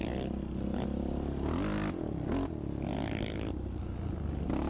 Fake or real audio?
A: real